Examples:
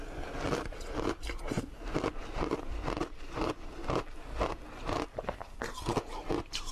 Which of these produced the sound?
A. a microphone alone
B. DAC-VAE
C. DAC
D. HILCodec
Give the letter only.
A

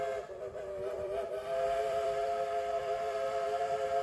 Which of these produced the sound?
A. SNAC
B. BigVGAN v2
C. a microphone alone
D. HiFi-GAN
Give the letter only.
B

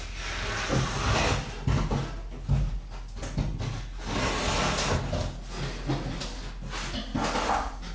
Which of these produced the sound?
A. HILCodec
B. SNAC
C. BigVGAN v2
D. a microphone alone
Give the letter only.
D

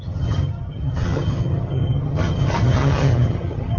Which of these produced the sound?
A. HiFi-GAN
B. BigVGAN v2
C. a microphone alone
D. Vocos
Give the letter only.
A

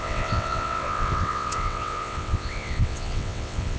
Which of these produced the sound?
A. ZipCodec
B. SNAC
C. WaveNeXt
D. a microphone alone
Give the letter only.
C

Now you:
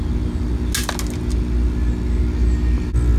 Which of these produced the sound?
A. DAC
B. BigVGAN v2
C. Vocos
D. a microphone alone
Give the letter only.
D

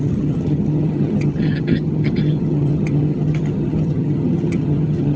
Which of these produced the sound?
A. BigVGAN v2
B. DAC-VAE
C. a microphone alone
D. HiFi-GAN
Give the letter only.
D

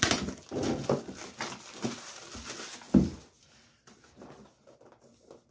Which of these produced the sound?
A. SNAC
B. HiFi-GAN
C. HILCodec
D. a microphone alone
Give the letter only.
D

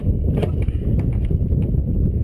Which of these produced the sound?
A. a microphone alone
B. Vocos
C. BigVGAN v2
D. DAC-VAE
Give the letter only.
A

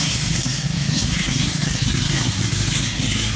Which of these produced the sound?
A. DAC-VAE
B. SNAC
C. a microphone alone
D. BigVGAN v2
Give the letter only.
B